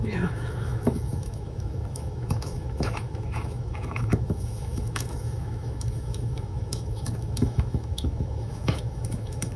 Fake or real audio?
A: fake